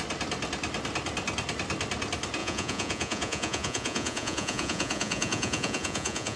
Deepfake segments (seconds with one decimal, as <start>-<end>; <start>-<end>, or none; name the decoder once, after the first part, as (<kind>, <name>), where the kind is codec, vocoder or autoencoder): 2.4-6.4 (vocoder, Vocos)